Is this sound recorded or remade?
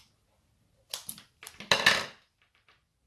recorded